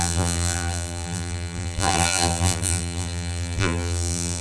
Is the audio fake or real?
fake